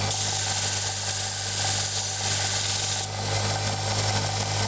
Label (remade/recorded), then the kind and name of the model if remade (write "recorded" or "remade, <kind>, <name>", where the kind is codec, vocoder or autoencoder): recorded